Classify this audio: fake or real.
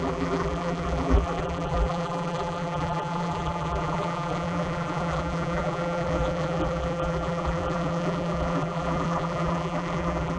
fake